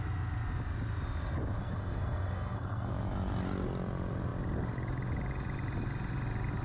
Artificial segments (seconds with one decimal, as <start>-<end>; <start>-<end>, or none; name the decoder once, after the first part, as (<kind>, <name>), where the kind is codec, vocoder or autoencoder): 1.6-2.9 (codec, SNAC)